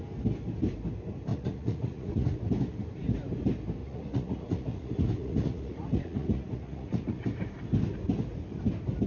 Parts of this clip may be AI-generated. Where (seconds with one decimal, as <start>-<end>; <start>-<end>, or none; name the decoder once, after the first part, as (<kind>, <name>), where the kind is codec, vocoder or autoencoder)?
1.3-2.4 (vocoder, Vocos); 3.8-7.2